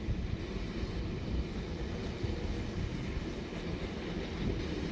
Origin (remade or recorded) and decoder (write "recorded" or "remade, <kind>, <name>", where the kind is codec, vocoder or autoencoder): recorded